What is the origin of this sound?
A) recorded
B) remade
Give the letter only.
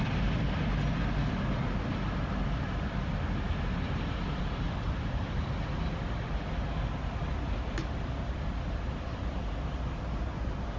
A